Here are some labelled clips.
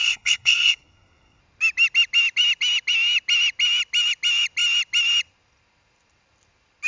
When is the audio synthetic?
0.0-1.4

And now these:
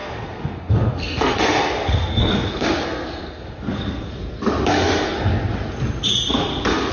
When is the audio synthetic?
0.0-4.1; 4.7-5.3; 6.1-6.9